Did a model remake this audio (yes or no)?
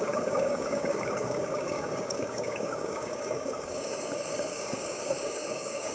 yes